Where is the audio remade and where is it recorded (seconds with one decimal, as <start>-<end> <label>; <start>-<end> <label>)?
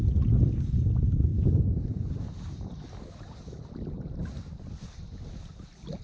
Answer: 0.0-1.3 recorded; 1.3-2.2 remade; 2.2-6.0 recorded